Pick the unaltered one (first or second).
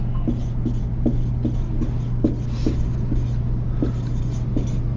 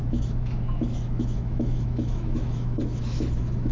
first